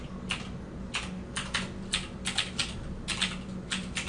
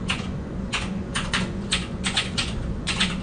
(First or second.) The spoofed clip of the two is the second